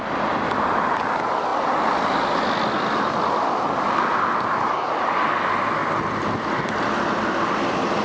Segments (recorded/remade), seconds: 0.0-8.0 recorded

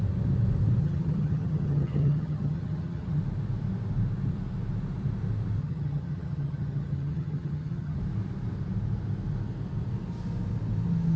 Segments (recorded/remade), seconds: 0.0-0.8 recorded; 0.8-3.2 remade; 3.2-5.6 recorded; 5.6-8.0 remade; 8.0-11.2 recorded

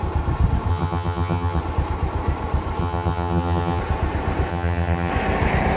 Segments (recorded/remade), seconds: 0.0-0.7 recorded; 0.7-1.6 remade; 1.6-2.8 recorded; 2.8-3.8 remade; 3.8-4.5 recorded; 4.5-5.1 remade; 5.1-5.8 recorded

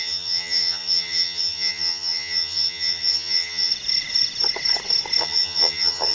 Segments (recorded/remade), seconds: 0.0-3.7 remade; 3.7-5.2 recorded; 5.2-6.1 remade

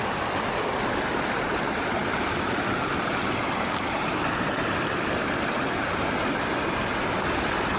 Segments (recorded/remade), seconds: 0.0-7.8 recorded

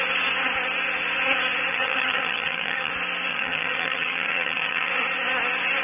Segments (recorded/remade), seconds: 0.0-1.7 recorded; 1.7-2.9 remade; 2.9-3.3 recorded; 3.3-4.9 remade; 4.9-5.8 recorded

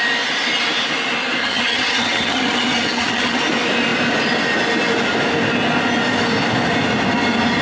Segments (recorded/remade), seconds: 0.0-1.4 recorded; 1.4-3.4 remade; 3.4-7.6 recorded